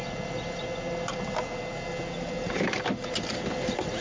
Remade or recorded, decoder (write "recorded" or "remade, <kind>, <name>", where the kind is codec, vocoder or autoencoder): recorded